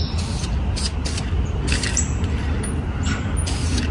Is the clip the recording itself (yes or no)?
yes